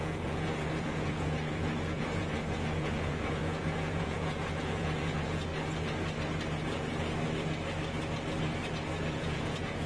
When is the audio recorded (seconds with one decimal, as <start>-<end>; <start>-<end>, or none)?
5.5-9.1